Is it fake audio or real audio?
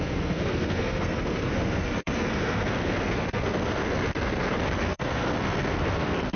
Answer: fake